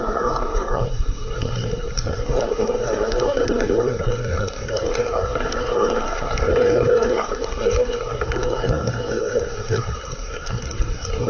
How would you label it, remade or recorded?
remade